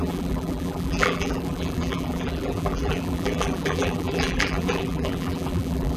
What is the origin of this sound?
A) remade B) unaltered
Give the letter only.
A